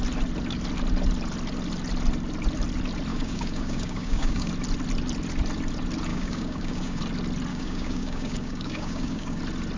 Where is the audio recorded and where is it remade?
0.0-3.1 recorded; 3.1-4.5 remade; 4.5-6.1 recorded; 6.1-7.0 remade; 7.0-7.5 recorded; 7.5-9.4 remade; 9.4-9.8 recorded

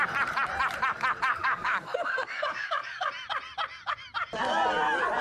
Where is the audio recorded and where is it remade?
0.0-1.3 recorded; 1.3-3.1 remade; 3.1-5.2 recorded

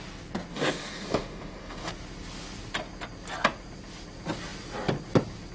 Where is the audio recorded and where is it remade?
0.0-0.5 recorded; 0.5-1.9 remade; 1.9-5.5 recorded

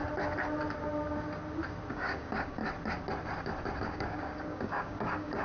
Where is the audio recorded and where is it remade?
0.0-1.9 recorded; 1.9-2.6 remade; 2.6-3.8 recorded; 3.8-5.4 remade